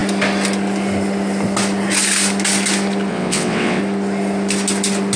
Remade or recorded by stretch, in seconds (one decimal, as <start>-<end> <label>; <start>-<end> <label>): 0.0-3.1 recorded; 3.1-3.8 remade; 3.8-5.2 recorded